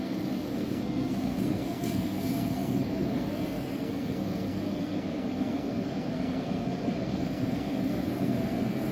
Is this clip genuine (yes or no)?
no